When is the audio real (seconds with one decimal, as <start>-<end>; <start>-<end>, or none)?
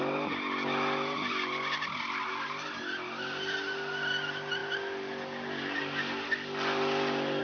0.0-7.4